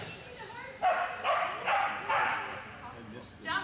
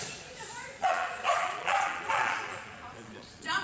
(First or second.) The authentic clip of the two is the first